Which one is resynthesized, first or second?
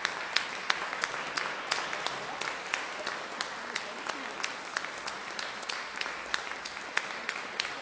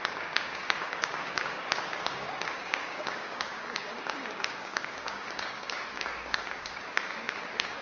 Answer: second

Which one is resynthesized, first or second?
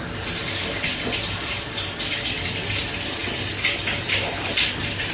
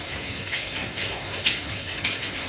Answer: second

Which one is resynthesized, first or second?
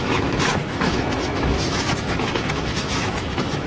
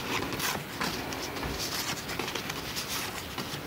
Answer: first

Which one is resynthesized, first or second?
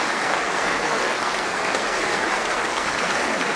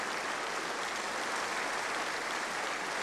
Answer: first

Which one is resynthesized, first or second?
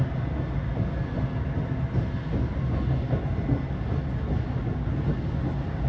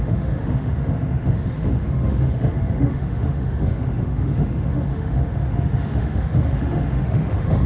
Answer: second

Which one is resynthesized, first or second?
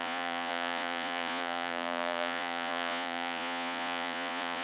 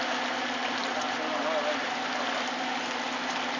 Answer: first